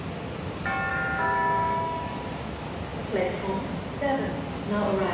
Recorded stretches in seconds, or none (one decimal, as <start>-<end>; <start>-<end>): 0.0-0.9; 2.2-5.1